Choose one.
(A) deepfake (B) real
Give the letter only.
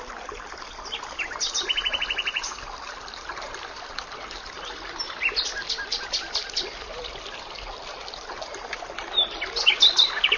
A